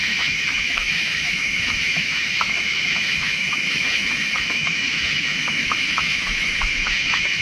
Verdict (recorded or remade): remade